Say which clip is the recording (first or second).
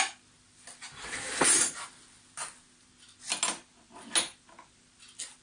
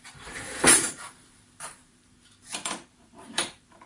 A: first